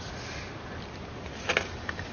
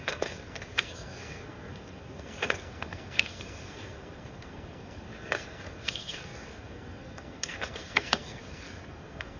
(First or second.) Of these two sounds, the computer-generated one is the second